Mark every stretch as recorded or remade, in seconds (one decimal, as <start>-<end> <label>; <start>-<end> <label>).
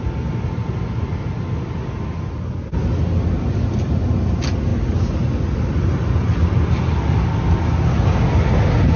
0.0-9.0 recorded